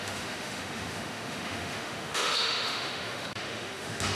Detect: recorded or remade remade